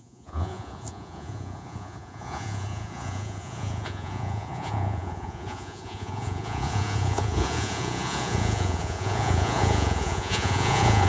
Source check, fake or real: fake